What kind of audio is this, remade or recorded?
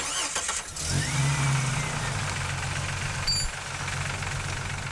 recorded